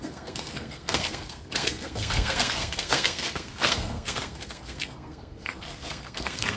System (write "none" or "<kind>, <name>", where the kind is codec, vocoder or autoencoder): codec, SNAC